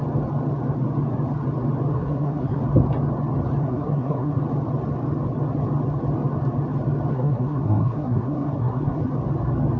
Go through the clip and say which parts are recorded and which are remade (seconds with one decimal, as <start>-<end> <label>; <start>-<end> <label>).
0.0-1.9 recorded; 1.9-2.6 remade; 2.6-3.6 recorded; 3.6-4.3 remade; 4.3-7.1 recorded; 7.1-9.0 remade; 9.0-9.8 recorded